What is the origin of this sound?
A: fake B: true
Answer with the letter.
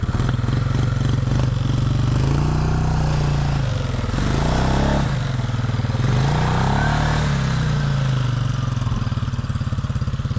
B